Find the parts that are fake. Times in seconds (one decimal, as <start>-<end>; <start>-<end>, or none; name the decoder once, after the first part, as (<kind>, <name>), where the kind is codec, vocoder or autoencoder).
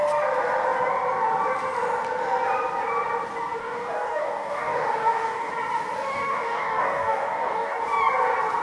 3.6-5.5 (codec, DAC); 6.1-7.8